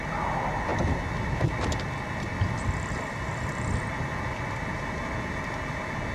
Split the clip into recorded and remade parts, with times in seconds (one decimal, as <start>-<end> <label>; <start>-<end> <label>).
0.0-6.1 recorded